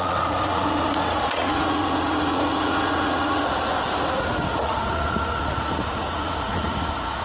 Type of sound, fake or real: fake